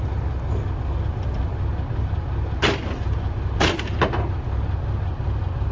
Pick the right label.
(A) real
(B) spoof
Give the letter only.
A